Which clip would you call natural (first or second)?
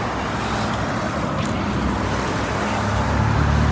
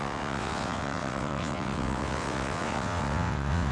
first